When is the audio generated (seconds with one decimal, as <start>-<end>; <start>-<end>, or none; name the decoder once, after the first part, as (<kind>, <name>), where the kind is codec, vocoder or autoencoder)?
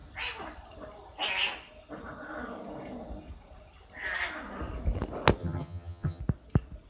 5.4-6.2 (vocoder, HiFi-GAN)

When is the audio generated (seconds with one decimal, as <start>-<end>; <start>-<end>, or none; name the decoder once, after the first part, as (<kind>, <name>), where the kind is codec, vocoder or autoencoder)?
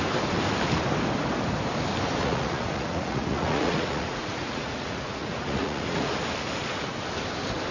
2.2-6.1 (vocoder, Vocos)